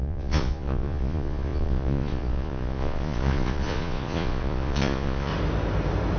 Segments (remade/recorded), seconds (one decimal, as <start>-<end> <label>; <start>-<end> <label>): 0.0-5.3 remade; 5.3-6.2 recorded